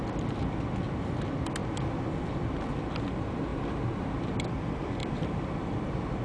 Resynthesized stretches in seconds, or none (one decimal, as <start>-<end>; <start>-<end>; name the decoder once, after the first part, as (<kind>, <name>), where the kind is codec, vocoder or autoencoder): 3.5-4.5 (vocoder, BigVGAN v2); 5.0-6.2